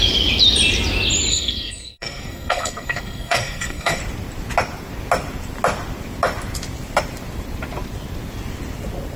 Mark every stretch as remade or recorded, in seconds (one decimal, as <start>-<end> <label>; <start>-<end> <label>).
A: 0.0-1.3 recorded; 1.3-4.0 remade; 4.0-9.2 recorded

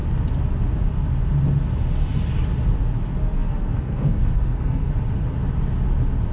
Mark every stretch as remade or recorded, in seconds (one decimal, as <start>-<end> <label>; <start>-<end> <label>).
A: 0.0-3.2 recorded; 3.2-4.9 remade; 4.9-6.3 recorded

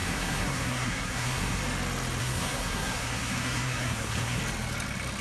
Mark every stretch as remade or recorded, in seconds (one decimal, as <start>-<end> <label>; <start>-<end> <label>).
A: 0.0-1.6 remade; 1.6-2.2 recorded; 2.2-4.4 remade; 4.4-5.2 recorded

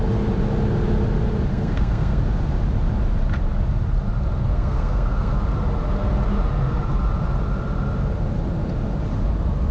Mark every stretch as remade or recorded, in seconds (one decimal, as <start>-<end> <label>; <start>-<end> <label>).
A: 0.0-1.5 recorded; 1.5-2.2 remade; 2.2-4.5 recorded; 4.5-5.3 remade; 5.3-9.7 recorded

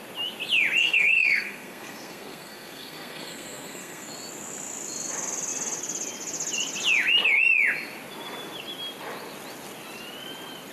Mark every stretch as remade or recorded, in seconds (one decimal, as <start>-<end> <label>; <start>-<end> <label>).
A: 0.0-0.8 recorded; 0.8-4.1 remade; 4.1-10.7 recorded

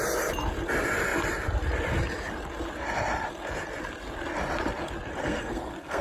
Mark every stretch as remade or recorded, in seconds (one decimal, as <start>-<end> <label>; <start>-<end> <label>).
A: 0.0-5.2 recorded; 5.2-6.0 remade

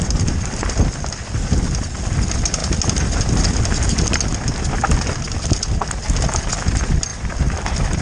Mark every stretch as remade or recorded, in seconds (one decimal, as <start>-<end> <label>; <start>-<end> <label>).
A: 0.0-8.0 recorded

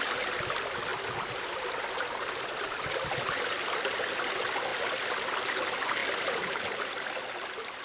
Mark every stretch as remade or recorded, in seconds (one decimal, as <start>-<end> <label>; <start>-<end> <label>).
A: 0.0-7.8 recorded